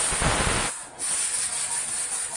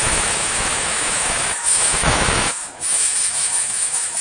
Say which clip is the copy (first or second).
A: second